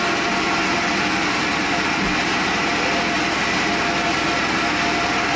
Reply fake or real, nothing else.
real